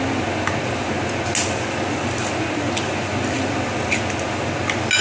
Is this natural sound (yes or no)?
yes